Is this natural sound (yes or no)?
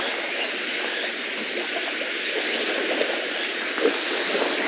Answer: yes